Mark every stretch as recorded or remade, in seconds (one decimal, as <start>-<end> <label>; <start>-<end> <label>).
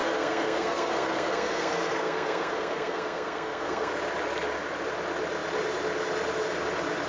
0.0-3.9 remade; 3.9-7.1 recorded